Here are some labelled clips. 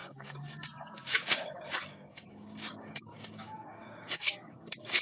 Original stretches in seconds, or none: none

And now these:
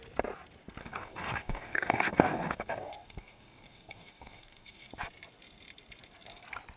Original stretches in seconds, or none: 0.0-0.8; 4.9-6.8

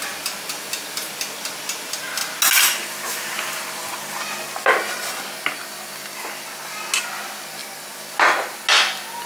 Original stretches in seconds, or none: 0.0-9.3

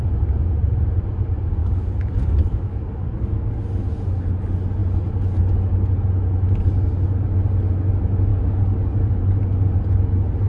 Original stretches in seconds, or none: 0.0-1.6; 3.5-8.3; 9.2-10.5

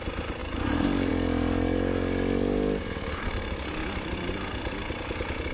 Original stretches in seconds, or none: 0.0-0.4; 1.1-5.5